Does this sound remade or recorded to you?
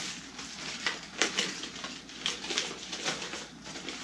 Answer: recorded